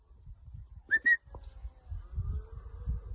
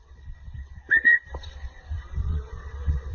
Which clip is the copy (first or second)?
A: second